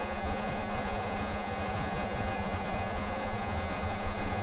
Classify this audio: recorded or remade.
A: remade